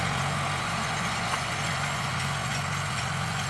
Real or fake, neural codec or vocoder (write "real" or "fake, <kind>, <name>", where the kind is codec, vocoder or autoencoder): fake, vocoder, Vocos